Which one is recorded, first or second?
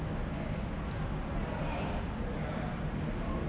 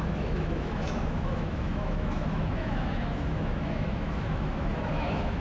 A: first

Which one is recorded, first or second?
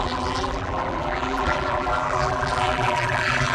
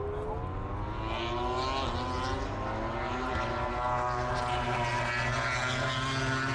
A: second